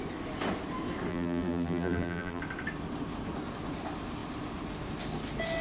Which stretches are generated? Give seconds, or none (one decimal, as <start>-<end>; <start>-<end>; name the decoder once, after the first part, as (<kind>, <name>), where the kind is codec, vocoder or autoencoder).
1.1-2.4 (vocoder, BigVGAN v2)